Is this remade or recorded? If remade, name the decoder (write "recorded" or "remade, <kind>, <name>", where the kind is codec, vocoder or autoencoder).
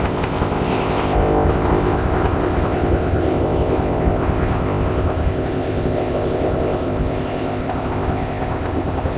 remade, codec, ZipCodec